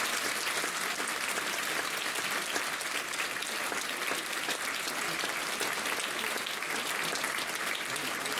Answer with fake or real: real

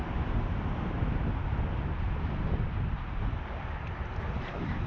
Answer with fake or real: real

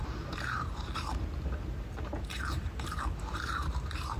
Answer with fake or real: fake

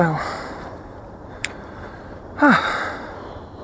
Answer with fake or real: fake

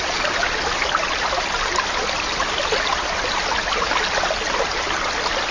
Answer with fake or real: real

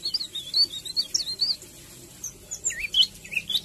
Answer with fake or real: real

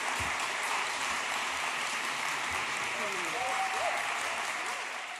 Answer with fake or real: fake